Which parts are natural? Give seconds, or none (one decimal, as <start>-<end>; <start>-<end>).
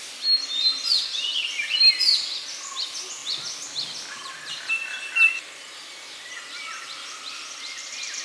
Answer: 0.0-8.2